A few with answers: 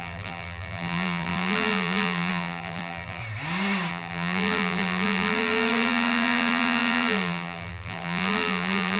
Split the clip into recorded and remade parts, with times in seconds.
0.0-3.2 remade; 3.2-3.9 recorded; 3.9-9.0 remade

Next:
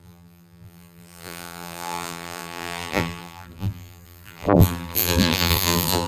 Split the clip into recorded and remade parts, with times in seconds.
0.0-6.1 remade

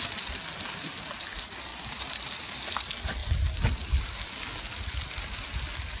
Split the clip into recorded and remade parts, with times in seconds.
0.0-1.7 recorded; 1.7-2.3 remade; 2.3-6.0 recorded

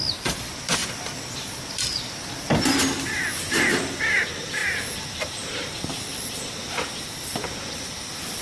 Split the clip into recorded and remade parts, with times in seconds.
0.0-8.4 recorded